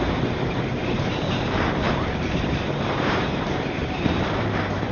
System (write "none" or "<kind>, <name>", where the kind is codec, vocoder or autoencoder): vocoder, BigVGAN v2